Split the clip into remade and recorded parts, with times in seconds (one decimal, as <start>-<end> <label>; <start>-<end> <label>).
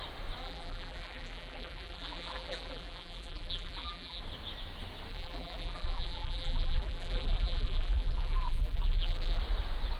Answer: 0.0-0.4 recorded; 0.4-4.2 remade; 4.2-5.1 recorded; 5.1-9.4 remade; 9.4-10.0 recorded